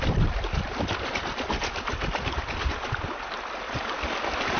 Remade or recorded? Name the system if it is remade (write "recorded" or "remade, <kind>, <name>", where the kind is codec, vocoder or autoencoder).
recorded